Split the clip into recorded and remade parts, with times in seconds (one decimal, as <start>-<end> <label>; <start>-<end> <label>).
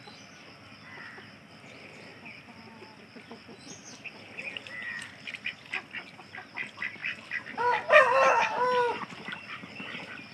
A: 0.0-2.1 recorded; 2.1-2.7 remade; 2.7-10.3 recorded